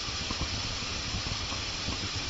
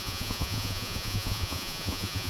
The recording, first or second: first